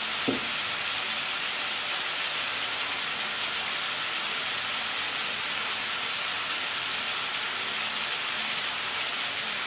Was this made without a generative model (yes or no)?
yes